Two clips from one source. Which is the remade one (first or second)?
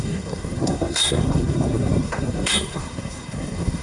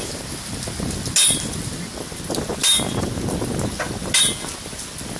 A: first